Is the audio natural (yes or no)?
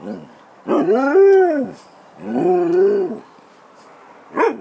yes